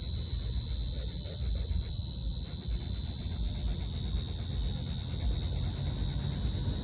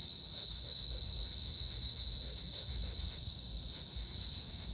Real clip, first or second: first